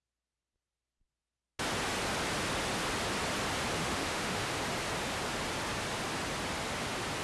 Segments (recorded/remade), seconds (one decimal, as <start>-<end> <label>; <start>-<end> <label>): 0.0-3.8 recorded; 3.8-4.5 remade; 4.5-7.2 recorded